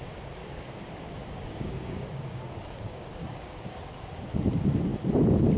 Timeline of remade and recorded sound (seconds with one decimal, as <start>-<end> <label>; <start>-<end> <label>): 0.0-0.4 recorded; 0.4-3.8 remade; 3.8-5.6 recorded